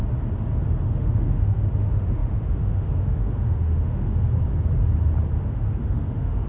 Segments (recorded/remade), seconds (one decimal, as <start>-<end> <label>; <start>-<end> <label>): 0.0-0.8 recorded; 0.8-4.1 remade; 4.1-5.4 recorded; 5.4-6.5 remade